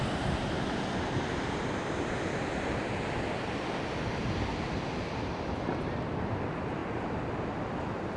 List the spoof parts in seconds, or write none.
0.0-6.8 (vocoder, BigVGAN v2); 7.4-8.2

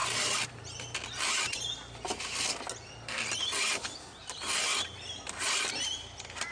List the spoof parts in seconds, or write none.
none

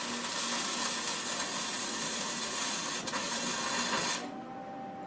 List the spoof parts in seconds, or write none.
1.5-3.4 (vocoder, Vocos)

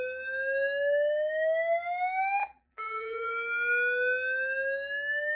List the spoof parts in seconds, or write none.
2.4-3.3 (vocoder, BigVGAN v2)